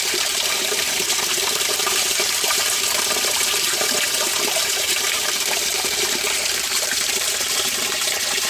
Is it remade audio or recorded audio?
remade